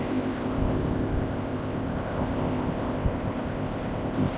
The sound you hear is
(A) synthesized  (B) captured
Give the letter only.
A